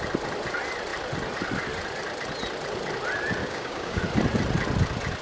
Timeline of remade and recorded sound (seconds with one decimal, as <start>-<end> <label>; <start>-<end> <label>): 0.0-3.4 recorded; 3.4-4.0 remade; 4.0-5.2 recorded

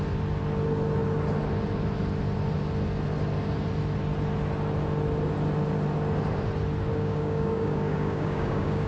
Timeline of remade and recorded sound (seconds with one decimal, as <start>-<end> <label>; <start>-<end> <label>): 0.0-6.9 recorded; 6.9-8.9 remade